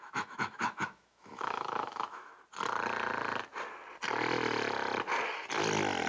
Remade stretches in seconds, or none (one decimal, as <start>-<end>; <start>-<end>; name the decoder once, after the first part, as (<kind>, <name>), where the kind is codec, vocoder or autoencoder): 0.0-2.3 (autoencoder, DAC-VAE)